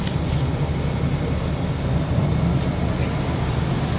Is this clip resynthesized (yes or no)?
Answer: no